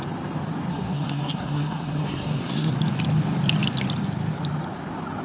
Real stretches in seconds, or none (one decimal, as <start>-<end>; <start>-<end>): 0.0-0.7; 2.7-5.2